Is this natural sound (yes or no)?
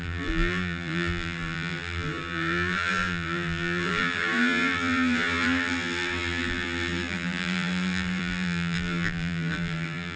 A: no